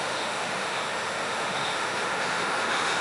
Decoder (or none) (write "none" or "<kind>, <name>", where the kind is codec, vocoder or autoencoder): autoencoder, DAC-VAE